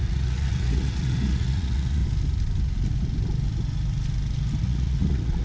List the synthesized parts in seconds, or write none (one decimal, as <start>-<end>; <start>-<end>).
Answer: 0.0-2.0; 4.6-5.4